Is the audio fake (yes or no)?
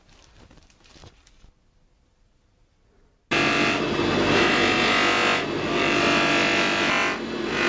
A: no